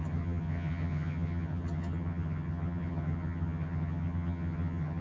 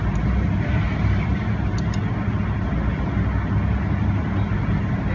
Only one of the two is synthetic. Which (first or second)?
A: first